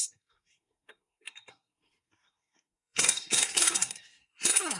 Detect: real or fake fake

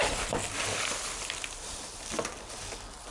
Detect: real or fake real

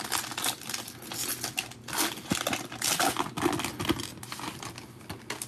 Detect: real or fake real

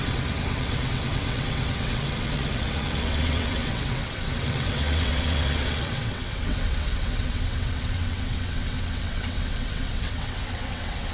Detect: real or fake fake